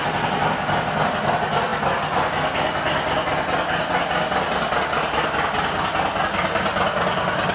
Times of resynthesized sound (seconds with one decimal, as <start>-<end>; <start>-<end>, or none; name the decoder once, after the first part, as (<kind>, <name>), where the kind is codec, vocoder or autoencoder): none